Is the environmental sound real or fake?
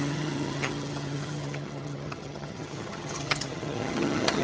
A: fake